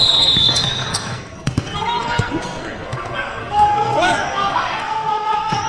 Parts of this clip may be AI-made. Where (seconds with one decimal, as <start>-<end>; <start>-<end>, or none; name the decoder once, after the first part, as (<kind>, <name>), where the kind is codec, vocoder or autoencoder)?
0.0-5.7 (codec, SNAC)

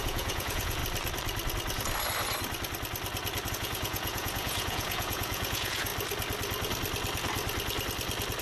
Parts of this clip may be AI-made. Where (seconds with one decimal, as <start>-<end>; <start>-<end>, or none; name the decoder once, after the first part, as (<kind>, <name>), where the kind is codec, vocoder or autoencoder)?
0.0-0.8 (vocoder, Vocos); 3.5-5.9

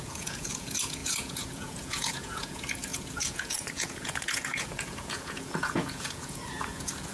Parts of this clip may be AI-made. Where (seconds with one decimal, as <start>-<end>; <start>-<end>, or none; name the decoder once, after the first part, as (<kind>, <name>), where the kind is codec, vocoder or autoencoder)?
0.0-7.1 (vocoder, Vocos)

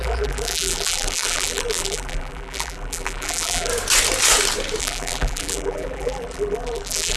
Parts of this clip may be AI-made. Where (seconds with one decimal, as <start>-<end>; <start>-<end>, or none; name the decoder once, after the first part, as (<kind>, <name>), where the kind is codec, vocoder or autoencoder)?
0.0-3.7 (vocoder, BigVGAN v2); 4.8-7.2

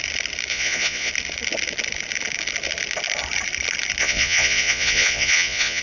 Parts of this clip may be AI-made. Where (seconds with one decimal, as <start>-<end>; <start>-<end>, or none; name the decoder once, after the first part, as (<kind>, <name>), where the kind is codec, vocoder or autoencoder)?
0.5-1.1 (vocoder, Vocos); 4.0-5.8